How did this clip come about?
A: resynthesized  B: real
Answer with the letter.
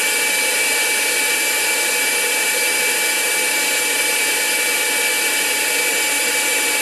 A